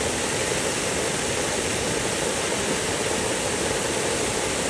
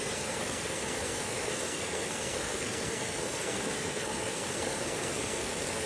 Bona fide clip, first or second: first